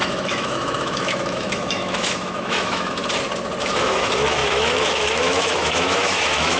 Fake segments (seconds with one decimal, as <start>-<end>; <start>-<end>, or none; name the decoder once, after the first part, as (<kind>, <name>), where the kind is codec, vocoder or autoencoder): 0.0-3.0 (autoencoder, DAC-VAE); 3.6-6.6